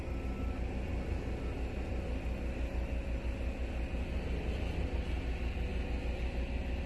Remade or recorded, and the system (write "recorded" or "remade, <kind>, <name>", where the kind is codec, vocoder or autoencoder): recorded